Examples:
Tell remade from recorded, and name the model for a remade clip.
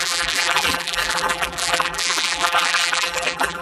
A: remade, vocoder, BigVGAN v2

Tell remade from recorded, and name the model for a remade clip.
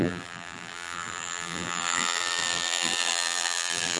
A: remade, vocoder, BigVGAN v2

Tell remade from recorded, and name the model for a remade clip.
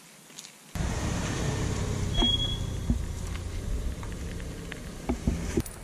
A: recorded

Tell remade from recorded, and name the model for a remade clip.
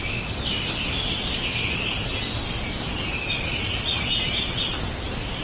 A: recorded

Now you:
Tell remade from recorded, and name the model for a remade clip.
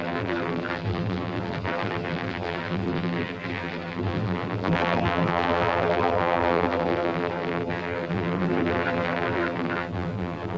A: remade, vocoder, BigVGAN v2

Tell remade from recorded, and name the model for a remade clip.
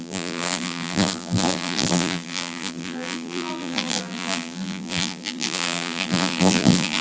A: remade, vocoder, BigVGAN v2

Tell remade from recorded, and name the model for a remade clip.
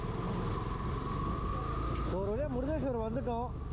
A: recorded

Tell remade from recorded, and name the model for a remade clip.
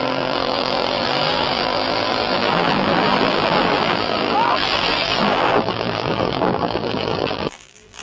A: remade, vocoder, BigVGAN v2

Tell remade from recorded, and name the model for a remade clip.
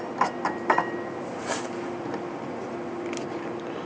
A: remade, vocoder, BigVGAN v2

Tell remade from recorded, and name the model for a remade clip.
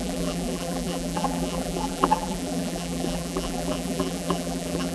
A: remade, vocoder, BigVGAN v2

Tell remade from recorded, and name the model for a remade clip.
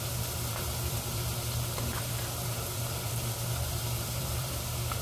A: remade, vocoder, BigVGAN v2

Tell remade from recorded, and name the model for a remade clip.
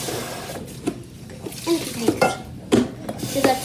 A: recorded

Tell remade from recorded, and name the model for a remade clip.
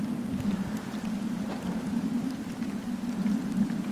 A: remade, vocoder, BigVGAN v2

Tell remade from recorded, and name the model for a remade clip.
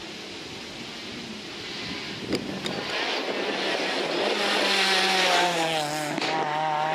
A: recorded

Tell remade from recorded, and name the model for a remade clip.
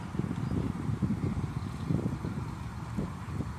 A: recorded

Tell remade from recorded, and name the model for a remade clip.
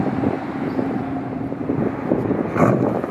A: remade, vocoder, BigVGAN v2